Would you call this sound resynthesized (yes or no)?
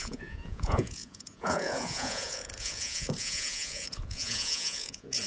yes